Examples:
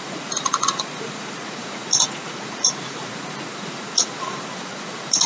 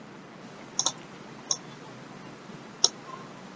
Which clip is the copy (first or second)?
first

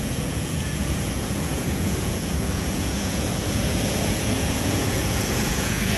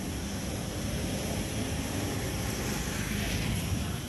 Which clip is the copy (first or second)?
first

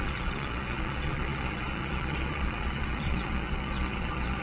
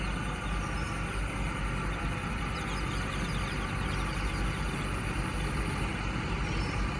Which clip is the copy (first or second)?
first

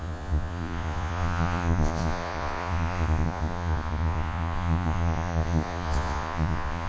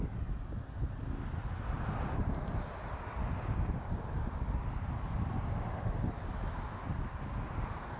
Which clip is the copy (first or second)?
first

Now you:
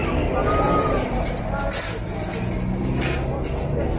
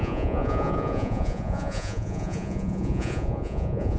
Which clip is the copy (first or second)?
second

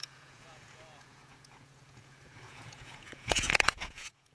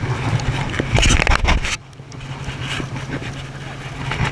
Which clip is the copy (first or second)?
first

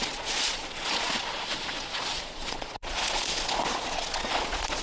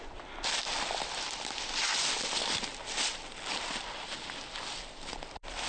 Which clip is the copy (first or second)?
first